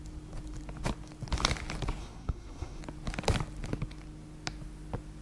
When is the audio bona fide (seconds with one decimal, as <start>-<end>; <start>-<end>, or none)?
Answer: 0.0-2.0; 2.8-5.2